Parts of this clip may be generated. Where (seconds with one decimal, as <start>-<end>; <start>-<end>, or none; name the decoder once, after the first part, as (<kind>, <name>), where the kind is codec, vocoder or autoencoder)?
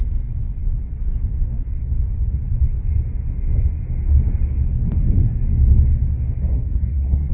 6.5-7.3 (codec, SNAC)